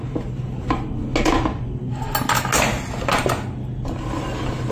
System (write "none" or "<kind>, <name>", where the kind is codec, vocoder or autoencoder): none